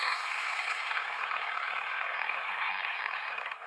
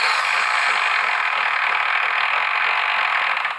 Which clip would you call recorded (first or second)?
second